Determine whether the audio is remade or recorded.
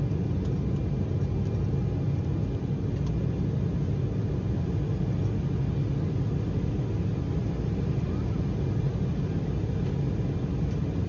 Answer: recorded